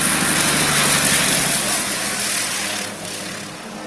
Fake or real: real